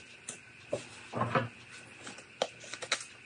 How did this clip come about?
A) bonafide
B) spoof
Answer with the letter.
A